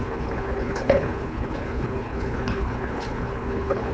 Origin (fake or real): fake